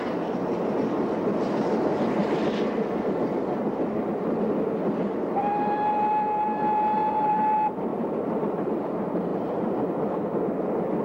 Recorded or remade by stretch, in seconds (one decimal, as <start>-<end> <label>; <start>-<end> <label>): 0.0-2.2 recorded; 2.2-3.3 remade; 3.3-4.1 recorded; 4.1-5.5 remade; 5.5-7.9 recorded; 7.9-8.7 remade; 8.7-9.3 recorded; 9.3-9.9 remade; 9.9-11.0 recorded